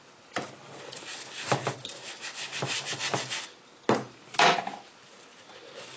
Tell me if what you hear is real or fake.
real